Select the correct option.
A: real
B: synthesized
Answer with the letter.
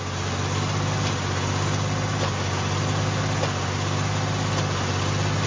A